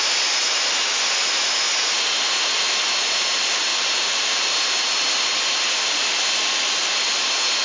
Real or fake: real